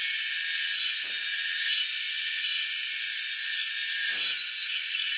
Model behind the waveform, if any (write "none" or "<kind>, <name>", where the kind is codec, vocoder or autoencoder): none